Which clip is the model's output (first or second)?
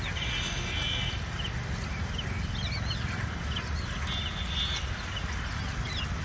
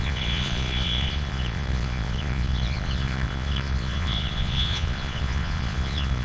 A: second